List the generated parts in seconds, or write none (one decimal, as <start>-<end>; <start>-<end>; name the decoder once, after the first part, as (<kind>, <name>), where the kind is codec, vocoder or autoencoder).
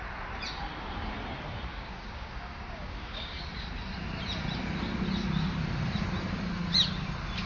1.7-3.4 (codec, DAC)